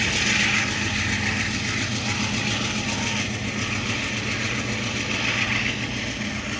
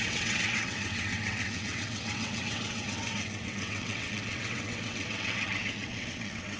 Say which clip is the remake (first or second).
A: second